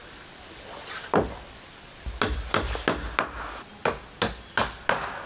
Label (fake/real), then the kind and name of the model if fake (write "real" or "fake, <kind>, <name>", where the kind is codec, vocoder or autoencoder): real